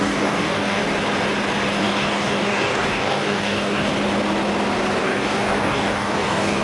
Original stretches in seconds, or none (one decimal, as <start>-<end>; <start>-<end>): 0.8-1.8; 3.9-5.0